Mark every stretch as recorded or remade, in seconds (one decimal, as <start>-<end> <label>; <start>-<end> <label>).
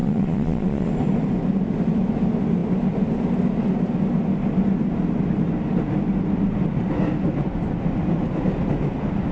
0.0-0.9 remade; 0.9-9.3 recorded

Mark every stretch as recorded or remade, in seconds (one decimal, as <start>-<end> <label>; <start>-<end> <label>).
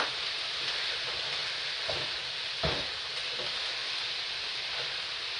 0.0-5.4 recorded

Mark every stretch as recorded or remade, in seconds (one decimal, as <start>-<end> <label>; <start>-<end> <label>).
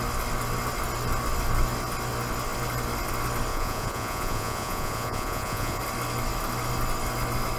0.0-3.5 recorded; 3.5-5.8 remade; 5.8-7.6 recorded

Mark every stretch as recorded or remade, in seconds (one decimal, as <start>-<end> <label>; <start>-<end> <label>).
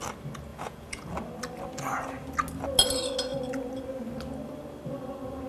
0.0-0.5 recorded; 0.5-1.1 remade; 1.1-5.5 recorded